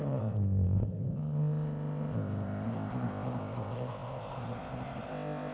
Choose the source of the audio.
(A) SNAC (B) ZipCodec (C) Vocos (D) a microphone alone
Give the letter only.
B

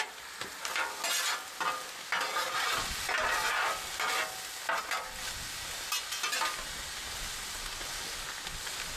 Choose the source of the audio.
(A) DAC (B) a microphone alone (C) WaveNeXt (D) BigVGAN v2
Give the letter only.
B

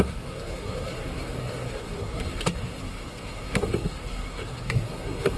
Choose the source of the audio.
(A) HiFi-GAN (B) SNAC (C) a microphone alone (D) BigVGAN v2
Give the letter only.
B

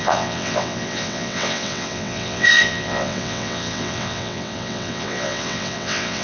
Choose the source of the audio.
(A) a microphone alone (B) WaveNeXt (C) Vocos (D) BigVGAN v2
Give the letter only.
B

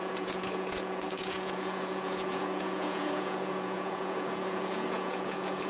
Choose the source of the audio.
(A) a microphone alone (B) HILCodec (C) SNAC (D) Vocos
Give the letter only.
D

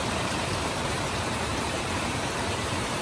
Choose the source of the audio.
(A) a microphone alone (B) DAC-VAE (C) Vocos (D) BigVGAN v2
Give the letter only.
D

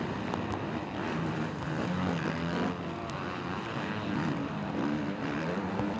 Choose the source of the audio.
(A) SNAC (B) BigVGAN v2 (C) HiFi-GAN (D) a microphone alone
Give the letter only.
B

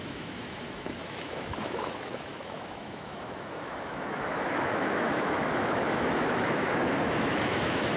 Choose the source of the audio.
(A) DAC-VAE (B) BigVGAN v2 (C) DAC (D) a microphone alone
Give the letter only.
A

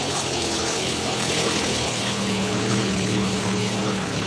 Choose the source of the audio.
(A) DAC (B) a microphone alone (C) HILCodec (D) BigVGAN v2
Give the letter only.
C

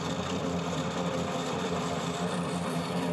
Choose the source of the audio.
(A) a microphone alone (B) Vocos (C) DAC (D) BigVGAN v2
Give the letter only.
A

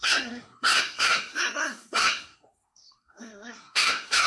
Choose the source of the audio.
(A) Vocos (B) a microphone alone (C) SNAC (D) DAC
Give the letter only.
C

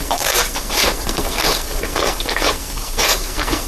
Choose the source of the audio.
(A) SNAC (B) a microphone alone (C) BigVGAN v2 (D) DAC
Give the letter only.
A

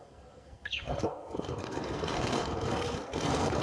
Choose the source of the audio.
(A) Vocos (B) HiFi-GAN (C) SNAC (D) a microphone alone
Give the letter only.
C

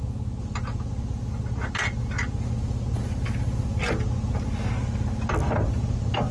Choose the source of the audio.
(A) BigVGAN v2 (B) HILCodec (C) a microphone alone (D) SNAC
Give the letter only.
C